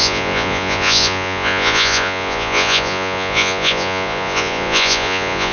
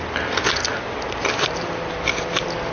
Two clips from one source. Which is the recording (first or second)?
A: second